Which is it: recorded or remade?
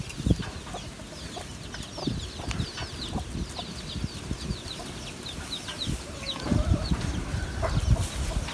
recorded